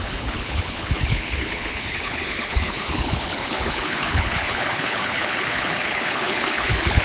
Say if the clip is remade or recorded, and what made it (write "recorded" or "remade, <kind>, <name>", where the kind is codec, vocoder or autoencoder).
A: remade, codec, HILCodec